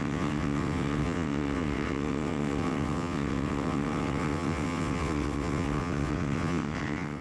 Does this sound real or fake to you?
fake